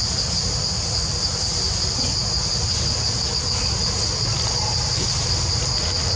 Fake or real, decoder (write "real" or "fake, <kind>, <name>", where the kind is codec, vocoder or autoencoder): real